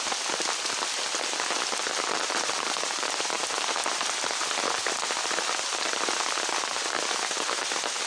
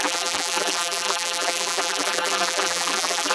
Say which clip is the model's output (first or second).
second